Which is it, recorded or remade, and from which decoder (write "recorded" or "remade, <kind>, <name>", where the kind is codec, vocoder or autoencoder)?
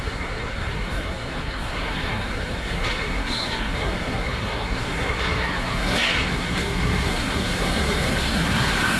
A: remade, codec, SNAC